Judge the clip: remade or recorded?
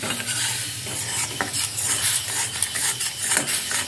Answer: recorded